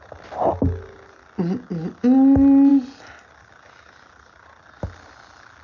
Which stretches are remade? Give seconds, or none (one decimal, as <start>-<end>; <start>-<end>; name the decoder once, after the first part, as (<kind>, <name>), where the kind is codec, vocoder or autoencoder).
none